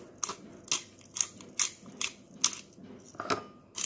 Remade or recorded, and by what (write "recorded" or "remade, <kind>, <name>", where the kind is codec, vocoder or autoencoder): recorded